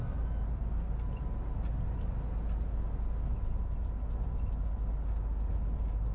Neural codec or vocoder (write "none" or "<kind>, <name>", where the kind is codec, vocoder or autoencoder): none